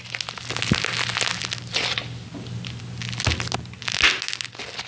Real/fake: real